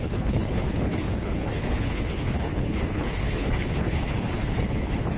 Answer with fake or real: fake